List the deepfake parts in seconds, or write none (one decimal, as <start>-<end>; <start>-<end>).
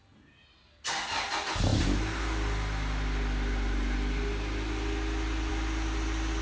none